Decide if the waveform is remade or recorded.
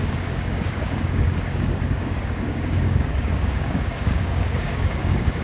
remade